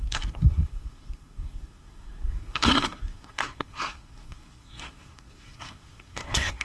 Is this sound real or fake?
fake